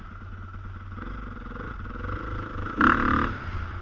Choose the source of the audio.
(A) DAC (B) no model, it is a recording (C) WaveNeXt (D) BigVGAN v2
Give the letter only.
B